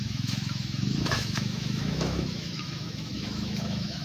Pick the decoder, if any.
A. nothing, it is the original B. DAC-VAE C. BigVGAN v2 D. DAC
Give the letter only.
B